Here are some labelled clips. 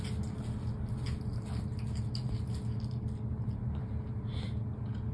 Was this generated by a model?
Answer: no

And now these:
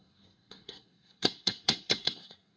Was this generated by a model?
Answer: yes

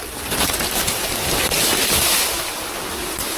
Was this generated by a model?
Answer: no